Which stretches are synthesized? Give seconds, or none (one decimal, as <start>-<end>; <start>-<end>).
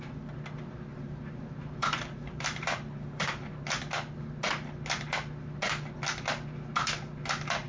0.9-3.6